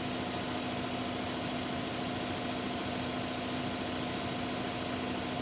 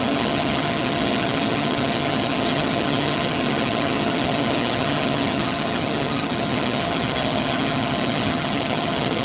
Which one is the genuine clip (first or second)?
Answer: first